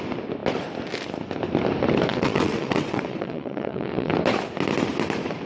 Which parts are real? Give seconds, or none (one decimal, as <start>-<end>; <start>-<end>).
0.0-2.1; 4.1-5.5